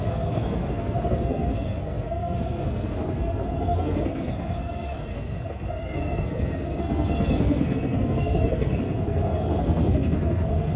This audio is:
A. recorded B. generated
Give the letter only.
B